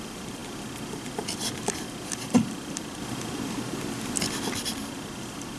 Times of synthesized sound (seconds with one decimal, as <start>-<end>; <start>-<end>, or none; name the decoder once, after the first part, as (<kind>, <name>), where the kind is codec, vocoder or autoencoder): none

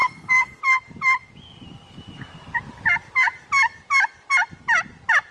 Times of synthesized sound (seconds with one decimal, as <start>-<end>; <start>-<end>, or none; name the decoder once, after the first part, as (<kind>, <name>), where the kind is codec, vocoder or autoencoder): 0.0-0.6 (codec, SNAC)

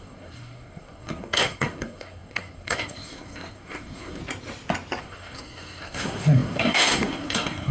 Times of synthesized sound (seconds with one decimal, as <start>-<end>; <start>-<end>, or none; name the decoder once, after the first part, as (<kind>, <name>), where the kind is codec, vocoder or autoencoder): 0.0-4.2 (codec, SNAC); 5.0-7.7

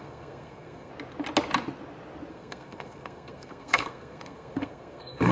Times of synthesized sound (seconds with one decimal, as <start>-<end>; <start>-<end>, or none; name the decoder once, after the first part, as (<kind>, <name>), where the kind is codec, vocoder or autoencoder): 0.0-0.9 (codec, SNAC); 2.3-5.3

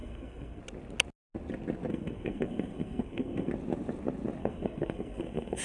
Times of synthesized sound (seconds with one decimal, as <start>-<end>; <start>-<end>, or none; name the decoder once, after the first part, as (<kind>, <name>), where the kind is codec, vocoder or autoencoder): 0.0-0.6 (codec, SNAC); 1.9-3.5; 4.4-5.6

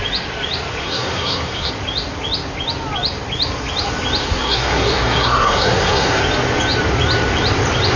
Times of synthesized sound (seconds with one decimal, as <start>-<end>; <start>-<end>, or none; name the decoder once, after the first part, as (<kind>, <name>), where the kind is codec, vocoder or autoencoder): 0.8-1.7 (codec, SNAC); 4.2-6.2

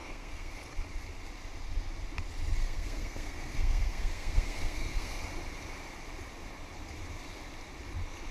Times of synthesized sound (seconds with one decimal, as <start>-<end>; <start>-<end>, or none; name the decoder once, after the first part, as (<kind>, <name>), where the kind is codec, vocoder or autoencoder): 0.0-0.5 (codec, SNAC); 2.6-5.2